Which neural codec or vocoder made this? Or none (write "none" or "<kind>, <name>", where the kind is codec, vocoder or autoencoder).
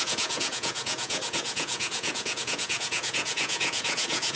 vocoder, Vocos